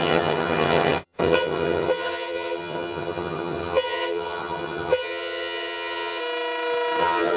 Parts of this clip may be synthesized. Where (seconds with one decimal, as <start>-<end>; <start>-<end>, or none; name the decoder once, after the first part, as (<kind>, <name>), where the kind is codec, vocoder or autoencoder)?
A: 0.0-6.2 (vocoder, HiFi-GAN); 7.0-7.4